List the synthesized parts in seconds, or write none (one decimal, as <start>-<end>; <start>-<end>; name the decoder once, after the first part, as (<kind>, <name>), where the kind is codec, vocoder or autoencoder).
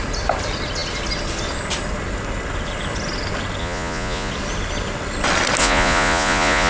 3.6-4.3 (vocoder, Vocos); 5.6-6.7